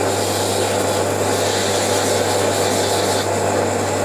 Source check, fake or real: real